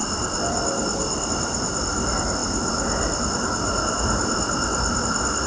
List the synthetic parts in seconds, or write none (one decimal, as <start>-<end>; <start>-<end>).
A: 0.0-2.4; 5.0-5.5